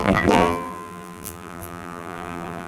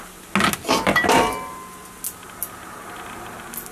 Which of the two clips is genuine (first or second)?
second